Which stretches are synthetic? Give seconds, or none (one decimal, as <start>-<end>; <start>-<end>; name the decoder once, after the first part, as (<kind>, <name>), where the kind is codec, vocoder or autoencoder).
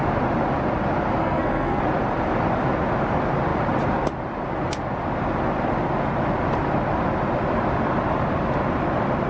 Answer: 1.2-1.8 (codec, SNAC)